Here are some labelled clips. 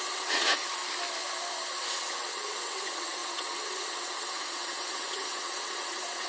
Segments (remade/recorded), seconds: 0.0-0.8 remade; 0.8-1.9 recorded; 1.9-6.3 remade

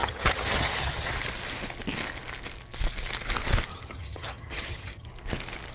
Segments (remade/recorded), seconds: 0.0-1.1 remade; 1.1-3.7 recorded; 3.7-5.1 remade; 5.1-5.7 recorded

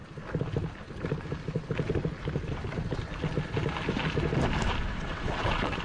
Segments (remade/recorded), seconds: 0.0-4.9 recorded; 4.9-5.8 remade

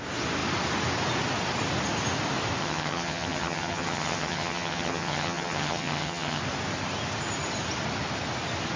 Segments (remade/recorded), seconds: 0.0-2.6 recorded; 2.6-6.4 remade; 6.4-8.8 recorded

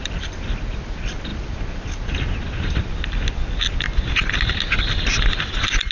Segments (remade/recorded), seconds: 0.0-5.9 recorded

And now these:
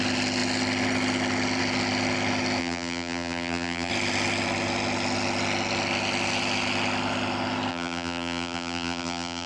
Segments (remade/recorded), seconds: 0.0-2.6 recorded; 2.6-3.9 remade; 3.9-7.7 recorded; 7.7-9.5 remade

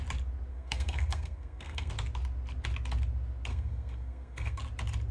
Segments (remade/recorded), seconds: 0.0-0.5 recorded; 0.5-1.9 remade; 1.9-3.5 recorded; 3.5-4.6 remade; 4.6-5.1 recorded